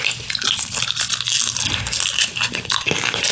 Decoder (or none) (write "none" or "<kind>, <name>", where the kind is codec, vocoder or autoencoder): none